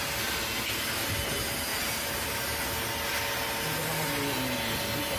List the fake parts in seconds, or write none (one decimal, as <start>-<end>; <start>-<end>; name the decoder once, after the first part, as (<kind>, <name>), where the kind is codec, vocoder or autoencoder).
none